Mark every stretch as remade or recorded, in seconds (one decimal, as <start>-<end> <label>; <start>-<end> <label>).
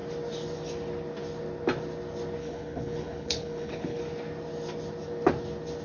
0.0-2.4 recorded; 2.4-4.0 remade; 4.0-5.8 recorded